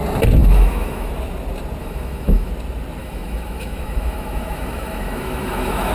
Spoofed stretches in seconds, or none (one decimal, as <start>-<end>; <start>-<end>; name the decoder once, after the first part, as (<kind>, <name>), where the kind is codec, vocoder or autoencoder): 0.4-1.1 (autoencoder, DAC-VAE); 1.8-2.5; 3.0-5.9